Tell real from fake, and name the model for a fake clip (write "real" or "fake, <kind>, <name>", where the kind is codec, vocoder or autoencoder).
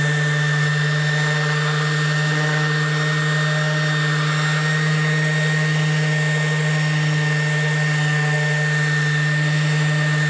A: real